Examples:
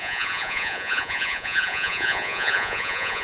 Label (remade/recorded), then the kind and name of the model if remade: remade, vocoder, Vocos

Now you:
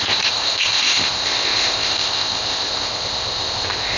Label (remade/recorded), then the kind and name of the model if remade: remade, codec, ZipCodec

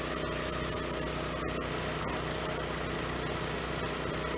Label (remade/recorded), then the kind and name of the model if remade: recorded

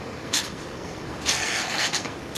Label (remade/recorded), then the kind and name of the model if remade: remade, codec, SNAC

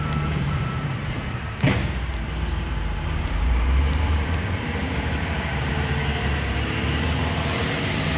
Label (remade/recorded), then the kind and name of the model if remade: remade, vocoder, BigVGAN v2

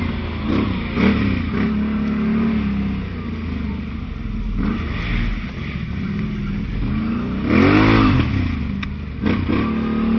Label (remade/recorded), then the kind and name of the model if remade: recorded